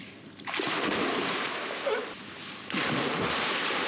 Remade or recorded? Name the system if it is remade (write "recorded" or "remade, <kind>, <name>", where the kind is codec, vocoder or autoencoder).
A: remade, vocoder, BigVGAN v2